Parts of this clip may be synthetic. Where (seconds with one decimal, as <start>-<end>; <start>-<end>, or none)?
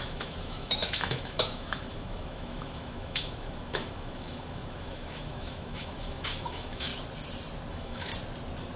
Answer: 0.0-6.9; 7.7-8.1